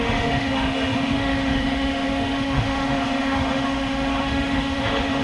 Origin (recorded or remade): remade